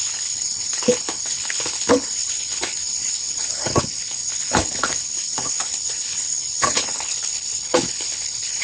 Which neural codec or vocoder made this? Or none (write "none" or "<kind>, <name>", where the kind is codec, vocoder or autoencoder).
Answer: codec, HILCodec